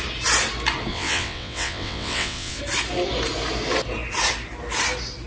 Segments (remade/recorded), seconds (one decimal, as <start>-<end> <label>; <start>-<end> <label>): 0.0-0.9 recorded; 0.9-2.6 remade; 2.6-5.3 recorded